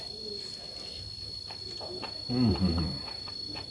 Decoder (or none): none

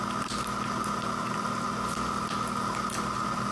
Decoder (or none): none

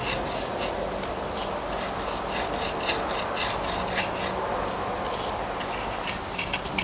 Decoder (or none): none